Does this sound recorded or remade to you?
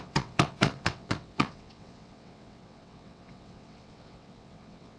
remade